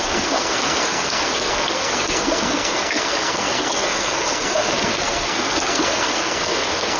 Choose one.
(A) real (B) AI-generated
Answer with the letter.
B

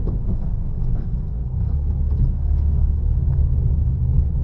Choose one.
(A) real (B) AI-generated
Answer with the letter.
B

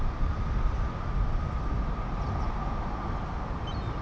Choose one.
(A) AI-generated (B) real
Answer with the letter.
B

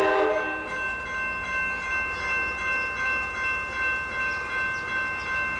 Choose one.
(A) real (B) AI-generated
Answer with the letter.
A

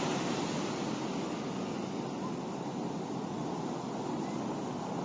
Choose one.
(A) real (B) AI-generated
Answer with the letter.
A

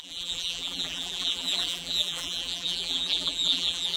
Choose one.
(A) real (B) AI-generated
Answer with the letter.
B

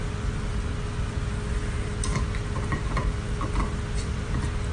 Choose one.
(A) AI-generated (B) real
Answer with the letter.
B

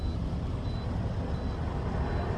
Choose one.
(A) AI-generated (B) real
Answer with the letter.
B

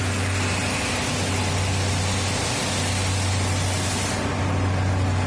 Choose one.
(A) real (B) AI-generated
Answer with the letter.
A